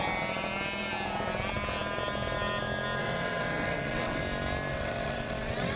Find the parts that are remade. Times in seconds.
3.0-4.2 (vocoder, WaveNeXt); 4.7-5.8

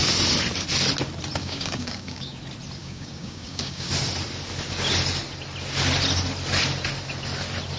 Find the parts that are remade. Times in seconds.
1.4-2.4 (codec, DAC); 2.8-3.9

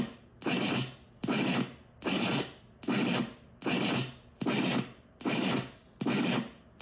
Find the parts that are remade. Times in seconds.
none